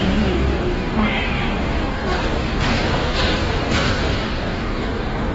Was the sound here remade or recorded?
remade